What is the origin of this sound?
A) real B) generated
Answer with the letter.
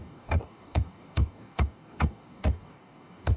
B